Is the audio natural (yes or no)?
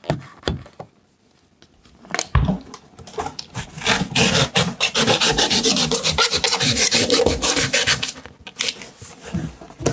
yes